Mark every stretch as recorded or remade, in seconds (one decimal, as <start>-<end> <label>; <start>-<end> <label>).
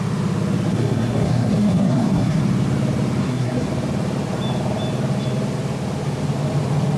0.0-0.7 recorded; 0.7-2.4 remade; 2.4-3.2 recorded; 3.2-3.7 remade; 3.7-7.0 recorded